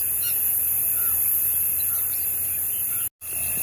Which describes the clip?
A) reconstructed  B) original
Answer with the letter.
B